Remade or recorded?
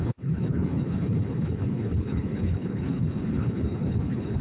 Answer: remade